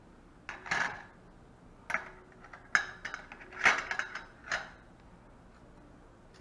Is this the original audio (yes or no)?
yes